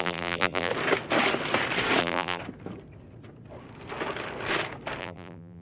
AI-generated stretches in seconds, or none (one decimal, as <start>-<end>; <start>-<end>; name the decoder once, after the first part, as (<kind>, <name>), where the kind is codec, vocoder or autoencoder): 0.0-0.7 (vocoder, BigVGAN v2); 2.0-2.4; 5.0-5.6